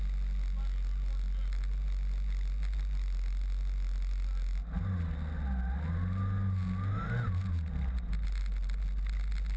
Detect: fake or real real